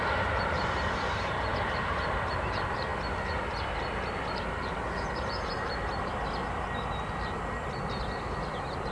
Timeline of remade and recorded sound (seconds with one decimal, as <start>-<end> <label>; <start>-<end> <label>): 0.0-2.9 remade; 2.9-5.5 recorded; 5.5-6.1 remade; 6.1-8.5 recorded; 8.5-8.9 remade